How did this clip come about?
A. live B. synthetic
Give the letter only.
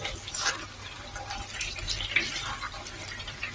A